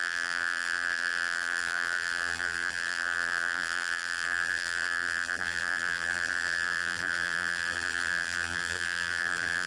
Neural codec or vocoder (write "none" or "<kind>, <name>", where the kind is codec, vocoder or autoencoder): vocoder, BigVGAN v2